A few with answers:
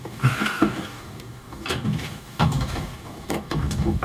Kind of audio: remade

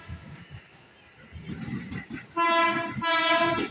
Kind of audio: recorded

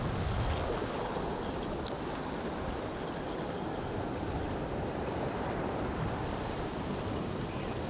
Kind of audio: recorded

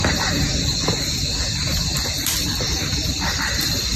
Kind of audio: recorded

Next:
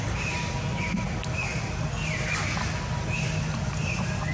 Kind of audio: recorded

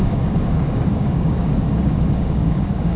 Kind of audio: remade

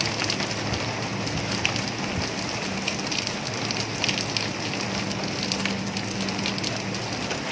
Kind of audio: recorded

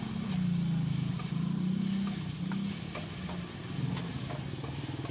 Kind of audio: recorded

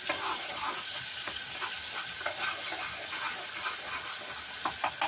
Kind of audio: recorded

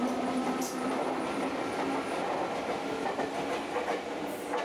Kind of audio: recorded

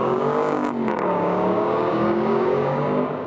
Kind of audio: remade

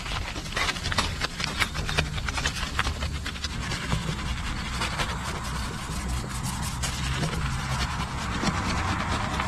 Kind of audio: recorded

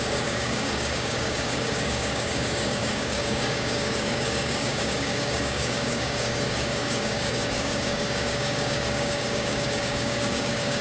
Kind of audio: remade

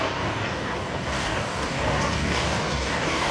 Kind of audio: remade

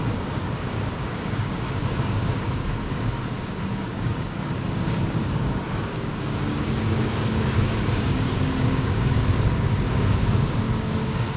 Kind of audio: remade